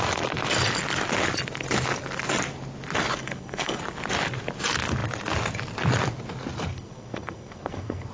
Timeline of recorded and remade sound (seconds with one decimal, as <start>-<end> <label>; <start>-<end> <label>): 0.0-3.2 recorded; 3.2-3.8 remade; 3.8-6.7 recorded; 6.7-8.1 remade